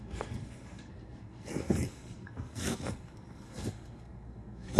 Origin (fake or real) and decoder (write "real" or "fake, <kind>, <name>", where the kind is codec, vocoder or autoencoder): fake, codec, SNAC